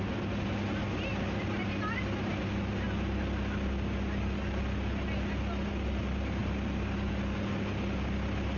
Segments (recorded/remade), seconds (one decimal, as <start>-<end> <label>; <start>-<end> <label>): 0.0-8.6 recorded